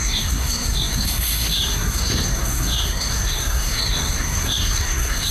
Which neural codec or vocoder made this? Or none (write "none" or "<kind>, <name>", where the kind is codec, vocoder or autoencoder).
codec, SNAC